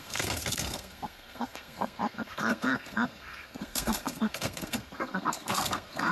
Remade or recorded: remade